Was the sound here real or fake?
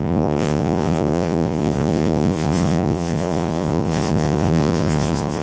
fake